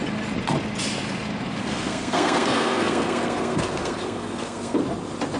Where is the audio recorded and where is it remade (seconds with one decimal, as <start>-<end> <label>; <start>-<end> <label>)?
0.0-1.6 recorded; 1.6-4.8 remade; 4.8-5.4 recorded